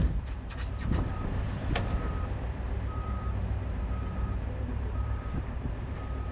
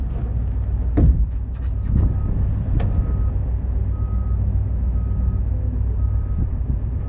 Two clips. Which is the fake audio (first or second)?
first